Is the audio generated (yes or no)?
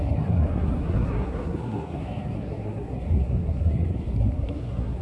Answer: yes